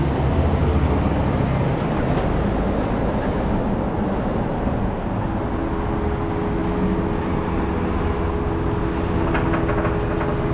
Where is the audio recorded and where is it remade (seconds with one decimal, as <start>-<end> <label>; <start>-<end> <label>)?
0.0-10.5 recorded